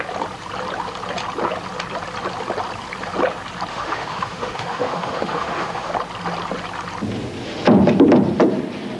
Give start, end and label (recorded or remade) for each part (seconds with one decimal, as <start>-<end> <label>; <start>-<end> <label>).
0.0-3.7 recorded; 3.7-5.9 remade; 5.9-9.0 recorded